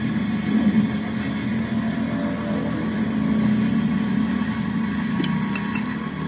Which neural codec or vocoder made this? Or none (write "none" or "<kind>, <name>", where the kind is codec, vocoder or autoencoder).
none